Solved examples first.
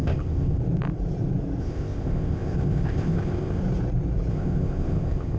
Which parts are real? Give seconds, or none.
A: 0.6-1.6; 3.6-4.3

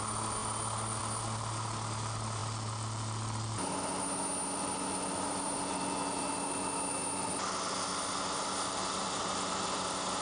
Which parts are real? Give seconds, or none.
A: 0.0-10.2

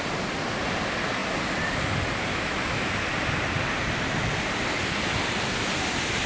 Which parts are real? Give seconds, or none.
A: 0.0-2.3; 2.9-6.3